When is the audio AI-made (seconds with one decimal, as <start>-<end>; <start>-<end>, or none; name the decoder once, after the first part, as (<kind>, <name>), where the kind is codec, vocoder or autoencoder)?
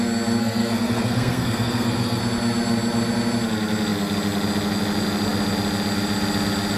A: 0.4-2.2 (codec, SNAC)